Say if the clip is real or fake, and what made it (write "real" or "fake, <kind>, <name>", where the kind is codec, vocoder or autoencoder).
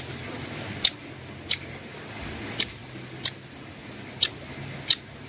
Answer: real